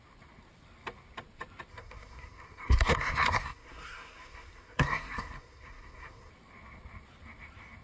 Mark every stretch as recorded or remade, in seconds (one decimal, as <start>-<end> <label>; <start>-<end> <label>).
0.0-1.7 recorded; 1.7-6.3 remade; 6.3-7.8 recorded